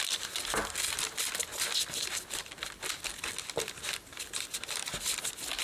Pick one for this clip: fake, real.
real